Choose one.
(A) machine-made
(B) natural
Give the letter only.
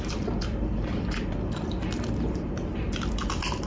A